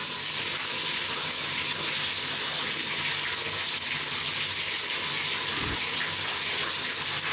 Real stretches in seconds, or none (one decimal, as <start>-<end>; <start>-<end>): 0.0-7.3